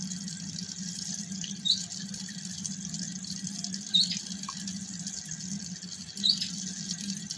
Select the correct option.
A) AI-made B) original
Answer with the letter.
B